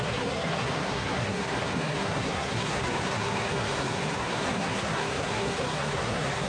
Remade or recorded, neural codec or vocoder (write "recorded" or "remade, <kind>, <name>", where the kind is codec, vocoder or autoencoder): remade, codec, SNAC